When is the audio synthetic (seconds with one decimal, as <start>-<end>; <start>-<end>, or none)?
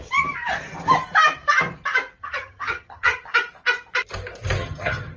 2.2-3.2; 4.6-5.2